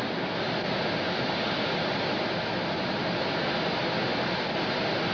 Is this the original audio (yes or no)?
yes